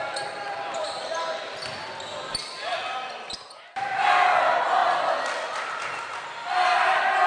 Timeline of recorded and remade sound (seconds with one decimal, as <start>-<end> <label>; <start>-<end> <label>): 0.0-7.3 recorded